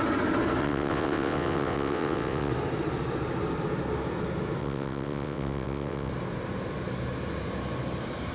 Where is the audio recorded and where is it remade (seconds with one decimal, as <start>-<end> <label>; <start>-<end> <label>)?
0.0-0.6 recorded; 0.6-2.5 remade; 2.5-4.6 recorded; 4.6-6.1 remade; 6.1-8.3 recorded